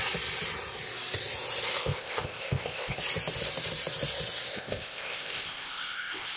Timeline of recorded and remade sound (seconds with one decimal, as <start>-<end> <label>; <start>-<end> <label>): 0.0-1.8 recorded; 1.8-3.0 remade; 3.0-4.5 recorded; 4.5-6.4 remade

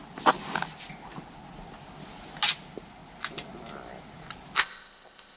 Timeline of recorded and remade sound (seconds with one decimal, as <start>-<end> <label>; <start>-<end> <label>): 0.0-4.6 recorded; 4.6-5.4 remade

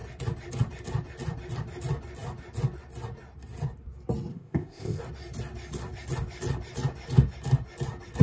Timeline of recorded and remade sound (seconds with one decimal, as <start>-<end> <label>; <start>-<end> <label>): 0.0-4.3 recorded; 4.3-5.0 remade; 5.0-8.2 recorded